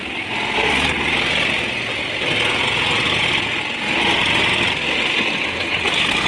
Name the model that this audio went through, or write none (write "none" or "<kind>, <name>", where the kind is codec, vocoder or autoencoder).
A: none